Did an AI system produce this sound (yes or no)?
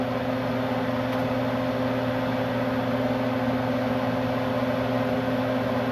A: no